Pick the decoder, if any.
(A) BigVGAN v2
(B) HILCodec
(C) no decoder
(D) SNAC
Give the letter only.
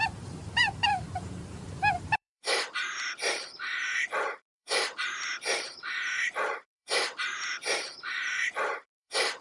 A